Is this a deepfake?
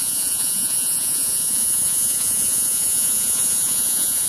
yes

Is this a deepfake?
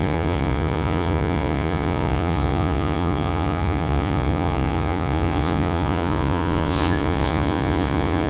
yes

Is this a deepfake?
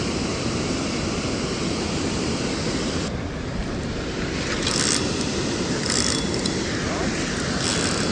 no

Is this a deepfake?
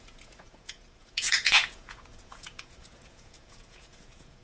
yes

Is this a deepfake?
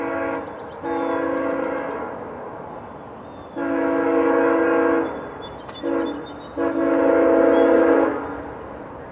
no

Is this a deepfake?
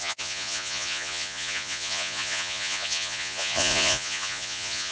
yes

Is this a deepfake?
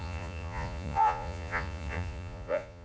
yes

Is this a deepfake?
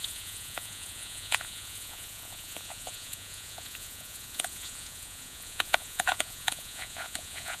yes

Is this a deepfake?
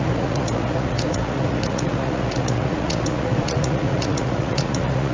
yes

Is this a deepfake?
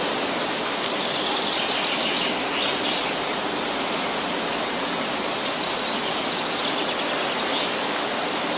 no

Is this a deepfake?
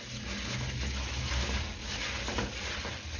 no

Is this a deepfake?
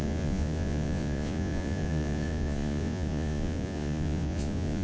yes